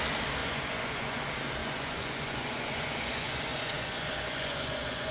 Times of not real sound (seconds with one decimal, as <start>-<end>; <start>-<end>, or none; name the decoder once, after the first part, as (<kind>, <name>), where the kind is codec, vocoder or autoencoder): 0.4-1.2 (vocoder, Vocos); 1.6-5.1